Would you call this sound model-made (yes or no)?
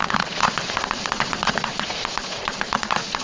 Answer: yes